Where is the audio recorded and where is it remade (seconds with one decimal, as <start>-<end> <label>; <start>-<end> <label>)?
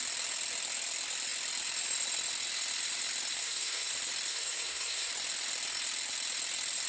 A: 0.0-3.4 recorded; 3.4-3.9 remade; 3.9-4.3 recorded; 4.3-5.1 remade; 5.1-6.9 recorded